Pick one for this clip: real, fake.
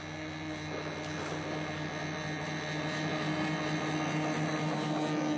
real